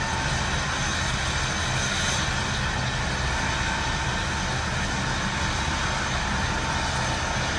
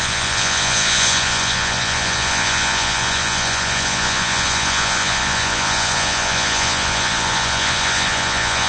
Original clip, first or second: first